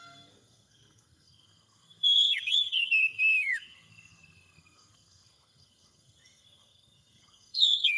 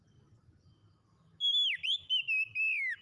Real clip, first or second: second